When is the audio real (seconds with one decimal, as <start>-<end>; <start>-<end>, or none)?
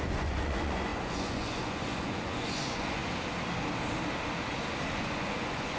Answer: 3.0-4.9